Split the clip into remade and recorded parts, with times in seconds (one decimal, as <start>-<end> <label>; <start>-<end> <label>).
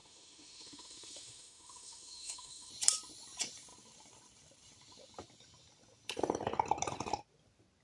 0.0-2.7 remade; 2.7-7.8 recorded